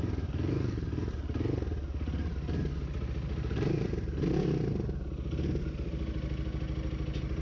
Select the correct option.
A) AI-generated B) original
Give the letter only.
B